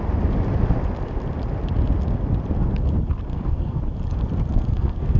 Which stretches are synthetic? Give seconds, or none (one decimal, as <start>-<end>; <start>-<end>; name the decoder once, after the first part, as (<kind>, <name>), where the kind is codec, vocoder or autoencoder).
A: 3.3-3.8 (codec, SNAC); 4.5-5.2